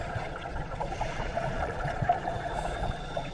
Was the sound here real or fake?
fake